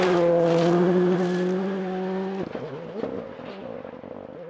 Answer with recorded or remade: recorded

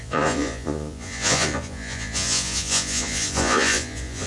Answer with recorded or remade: remade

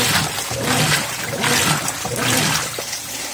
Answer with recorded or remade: recorded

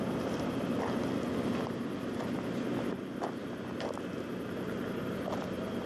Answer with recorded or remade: recorded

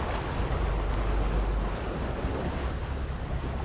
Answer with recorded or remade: recorded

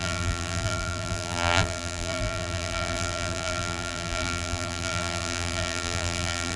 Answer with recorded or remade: remade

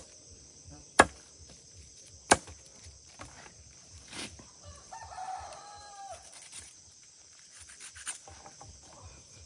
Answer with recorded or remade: remade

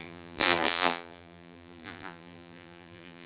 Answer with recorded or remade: remade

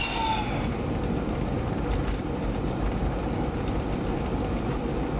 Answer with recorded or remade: recorded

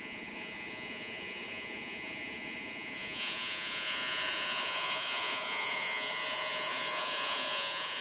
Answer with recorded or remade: remade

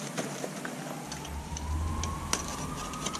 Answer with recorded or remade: recorded